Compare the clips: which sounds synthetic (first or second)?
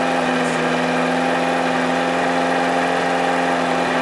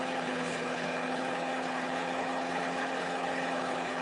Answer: second